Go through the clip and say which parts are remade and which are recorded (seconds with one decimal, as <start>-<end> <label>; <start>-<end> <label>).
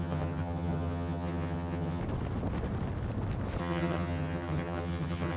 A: 0.0-2.0 remade; 2.0-3.6 recorded; 3.6-5.4 remade